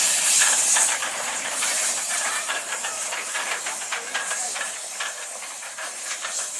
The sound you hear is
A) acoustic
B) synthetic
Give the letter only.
B